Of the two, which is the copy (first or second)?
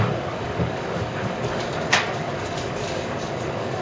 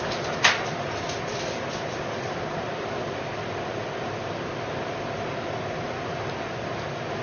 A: first